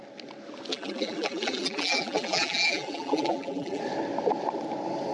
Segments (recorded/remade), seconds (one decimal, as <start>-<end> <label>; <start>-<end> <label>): 0.0-0.7 recorded; 0.7-3.8 remade; 3.8-5.1 recorded

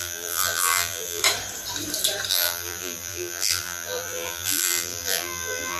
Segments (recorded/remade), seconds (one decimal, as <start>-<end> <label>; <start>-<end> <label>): 0.0-1.2 remade; 1.2-2.3 recorded; 2.3-5.8 remade